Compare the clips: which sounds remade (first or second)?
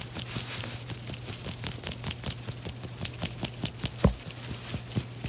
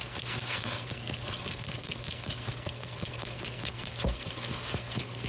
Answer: second